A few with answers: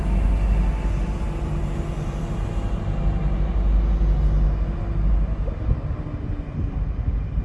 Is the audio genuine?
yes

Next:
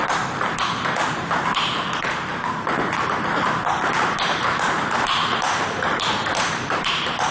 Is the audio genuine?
no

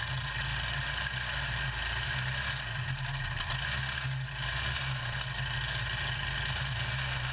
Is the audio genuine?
yes